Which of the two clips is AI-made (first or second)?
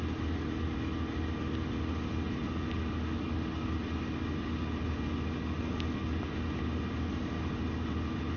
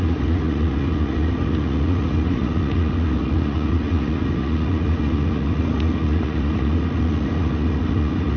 second